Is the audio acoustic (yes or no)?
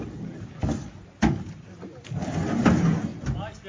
yes